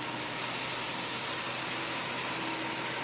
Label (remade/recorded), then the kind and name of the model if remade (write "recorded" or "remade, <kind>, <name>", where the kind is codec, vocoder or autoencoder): recorded